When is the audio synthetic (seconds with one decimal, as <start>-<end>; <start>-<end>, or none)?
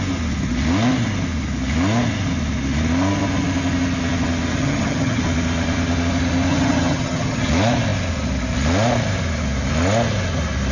4.6-5.2; 6.5-7.5